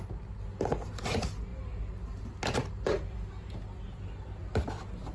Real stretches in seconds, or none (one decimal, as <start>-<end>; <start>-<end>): 0.0-5.1